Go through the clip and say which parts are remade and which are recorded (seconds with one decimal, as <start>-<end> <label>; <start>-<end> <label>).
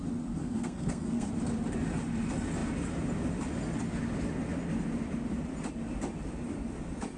0.0-0.4 recorded; 0.4-1.3 remade; 1.3-7.2 recorded